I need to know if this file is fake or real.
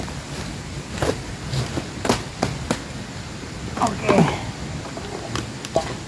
real